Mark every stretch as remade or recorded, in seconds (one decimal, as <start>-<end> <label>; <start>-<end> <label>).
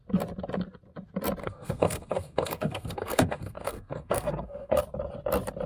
0.0-1.4 recorded; 1.4-4.8 remade; 4.8-5.7 recorded